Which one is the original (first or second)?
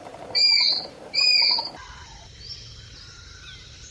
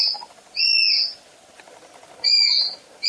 second